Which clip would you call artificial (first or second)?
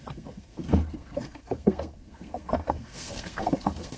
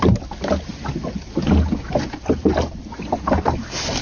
first